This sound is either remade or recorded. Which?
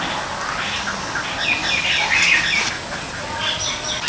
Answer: recorded